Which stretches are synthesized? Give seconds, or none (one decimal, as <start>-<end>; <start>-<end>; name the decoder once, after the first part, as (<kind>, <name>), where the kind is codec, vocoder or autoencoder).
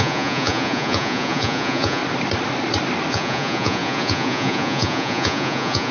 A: 0.0-2.0 (vocoder, Vocos); 3.1-5.9